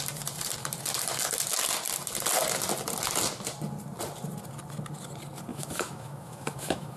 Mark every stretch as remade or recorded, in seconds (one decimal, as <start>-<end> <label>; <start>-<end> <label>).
0.0-5.5 recorded; 5.5-7.0 remade